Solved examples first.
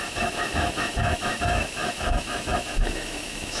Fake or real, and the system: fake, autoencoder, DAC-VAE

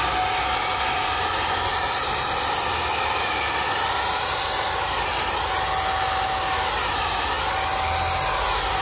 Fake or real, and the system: real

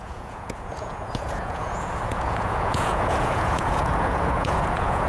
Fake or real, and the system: fake, vocoder, Vocos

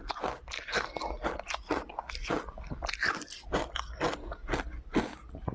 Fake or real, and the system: real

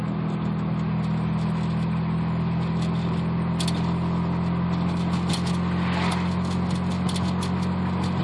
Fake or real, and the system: real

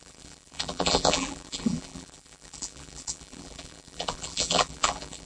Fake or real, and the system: fake, vocoder, BigVGAN v2